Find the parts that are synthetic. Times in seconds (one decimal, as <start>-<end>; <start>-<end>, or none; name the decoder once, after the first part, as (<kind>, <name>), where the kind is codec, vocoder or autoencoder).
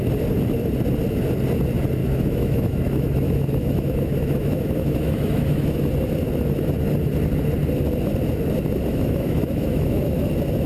2.0-5.8 (autoencoder, DAC-VAE); 8.9-10.2